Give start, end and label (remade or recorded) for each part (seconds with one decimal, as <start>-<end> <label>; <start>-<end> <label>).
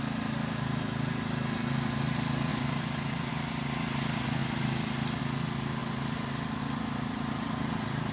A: 0.0-2.5 recorded; 2.5-3.3 remade; 3.3-8.1 recorded